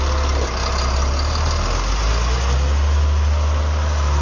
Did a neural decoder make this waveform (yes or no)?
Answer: no